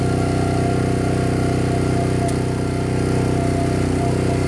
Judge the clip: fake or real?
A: real